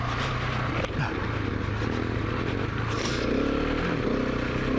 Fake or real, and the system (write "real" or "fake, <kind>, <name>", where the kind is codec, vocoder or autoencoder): real